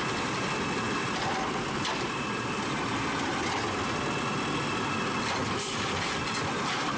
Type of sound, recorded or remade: recorded